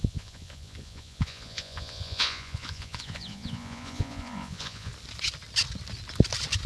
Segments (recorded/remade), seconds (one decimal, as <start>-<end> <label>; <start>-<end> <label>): 0.0-4.9 remade; 4.9-6.7 recorded

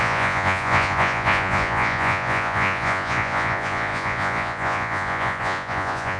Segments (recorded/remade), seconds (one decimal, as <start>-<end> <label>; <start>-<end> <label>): 0.0-6.2 remade

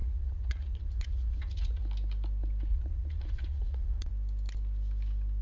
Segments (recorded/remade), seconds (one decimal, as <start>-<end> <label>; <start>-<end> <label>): 0.0-1.8 remade; 1.8-2.7 recorded; 2.7-4.1 remade; 4.1-5.4 recorded